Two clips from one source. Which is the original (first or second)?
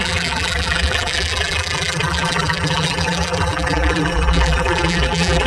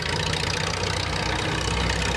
second